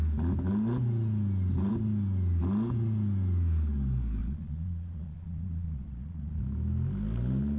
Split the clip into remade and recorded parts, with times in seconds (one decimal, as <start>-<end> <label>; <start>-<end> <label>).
0.0-4.2 recorded; 4.2-6.4 remade; 6.4-7.6 recorded